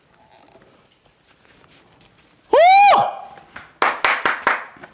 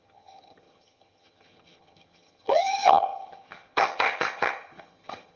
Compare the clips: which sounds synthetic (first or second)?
second